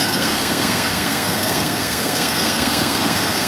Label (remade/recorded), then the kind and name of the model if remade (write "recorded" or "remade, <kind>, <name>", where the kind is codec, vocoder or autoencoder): remade, codec, SNAC